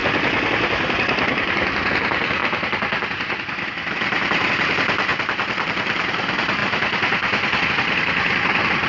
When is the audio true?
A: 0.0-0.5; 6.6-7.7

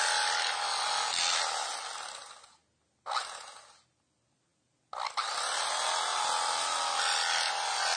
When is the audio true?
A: 0.0-8.0

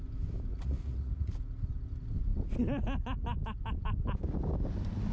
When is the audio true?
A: 0.0-0.5; 1.3-5.1